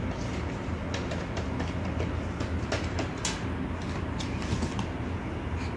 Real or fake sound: real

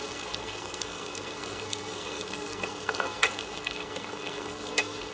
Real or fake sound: fake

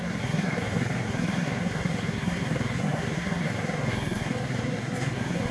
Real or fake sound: fake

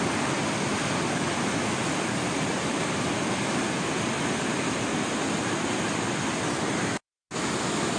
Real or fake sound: real